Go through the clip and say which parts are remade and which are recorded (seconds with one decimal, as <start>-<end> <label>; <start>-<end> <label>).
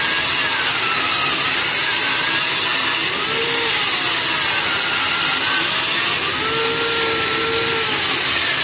0.0-8.6 recorded